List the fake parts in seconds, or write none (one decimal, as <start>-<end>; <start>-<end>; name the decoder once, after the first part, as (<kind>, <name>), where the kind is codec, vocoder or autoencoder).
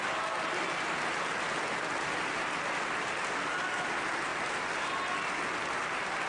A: none